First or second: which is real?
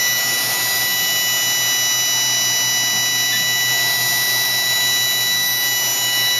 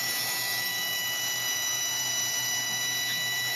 first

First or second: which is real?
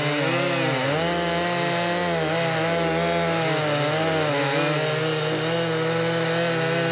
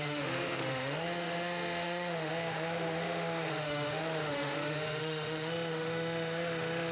first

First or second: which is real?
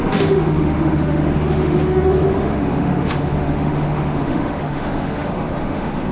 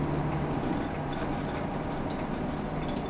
second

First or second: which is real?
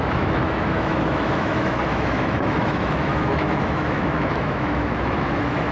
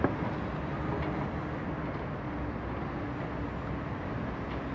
second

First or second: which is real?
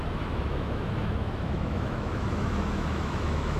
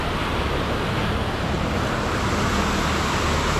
second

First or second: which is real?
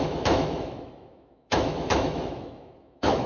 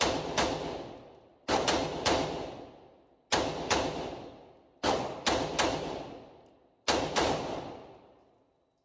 second